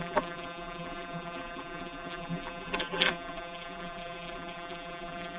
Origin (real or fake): fake